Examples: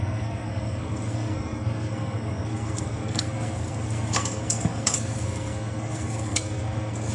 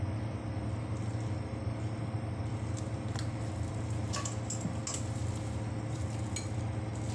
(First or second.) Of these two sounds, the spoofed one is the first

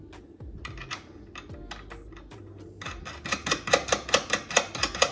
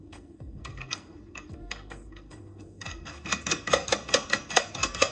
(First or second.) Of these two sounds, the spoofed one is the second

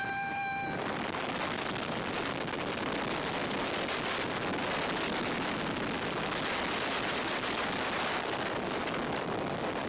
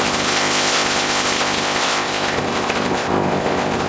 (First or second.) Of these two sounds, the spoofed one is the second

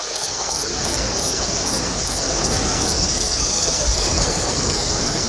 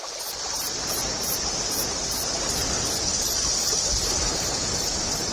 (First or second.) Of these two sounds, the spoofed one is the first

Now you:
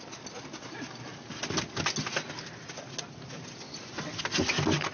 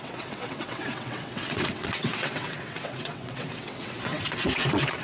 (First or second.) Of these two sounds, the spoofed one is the second